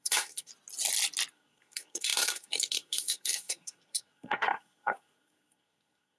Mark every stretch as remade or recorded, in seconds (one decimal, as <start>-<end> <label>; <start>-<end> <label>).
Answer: 0.0-0.5 remade; 0.5-1.3 recorded; 1.3-6.2 remade